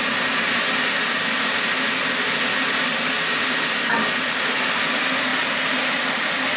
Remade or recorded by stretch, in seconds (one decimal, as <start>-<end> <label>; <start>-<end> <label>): 0.0-5.3 recorded; 5.3-6.0 remade; 6.0-6.6 recorded